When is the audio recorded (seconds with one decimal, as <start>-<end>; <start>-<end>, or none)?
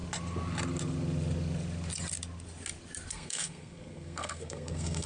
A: 0.0-3.1